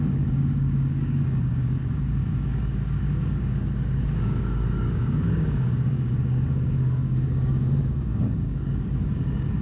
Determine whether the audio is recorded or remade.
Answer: remade